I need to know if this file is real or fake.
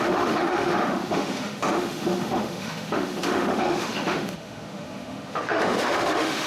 fake